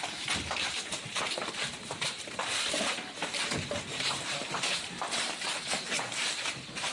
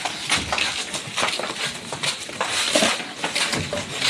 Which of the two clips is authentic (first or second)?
second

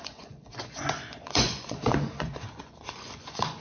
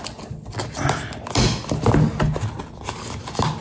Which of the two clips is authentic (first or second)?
second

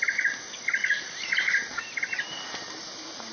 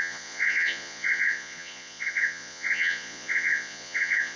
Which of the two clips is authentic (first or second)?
first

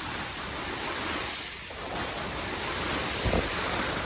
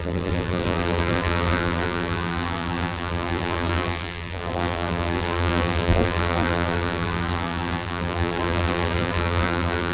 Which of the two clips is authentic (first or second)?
first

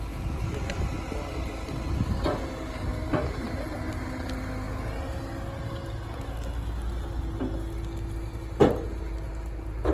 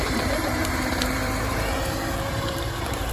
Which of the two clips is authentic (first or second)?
first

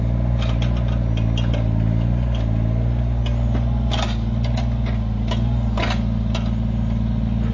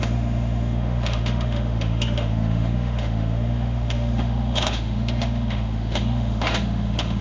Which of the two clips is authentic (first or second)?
first